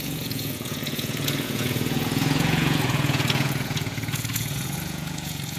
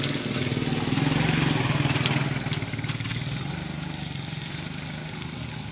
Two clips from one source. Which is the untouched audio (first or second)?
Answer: second